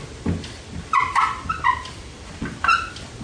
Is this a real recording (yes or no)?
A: yes